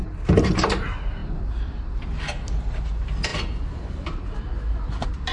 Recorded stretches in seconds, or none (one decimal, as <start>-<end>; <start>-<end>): 0.0-5.3